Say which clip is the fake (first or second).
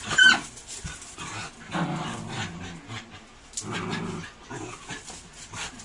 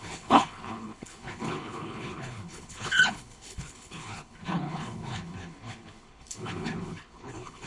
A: second